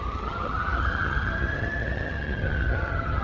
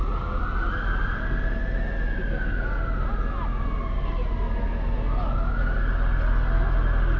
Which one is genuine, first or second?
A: second